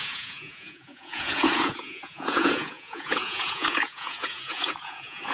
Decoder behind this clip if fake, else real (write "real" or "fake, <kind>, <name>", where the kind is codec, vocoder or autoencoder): fake, vocoder, Vocos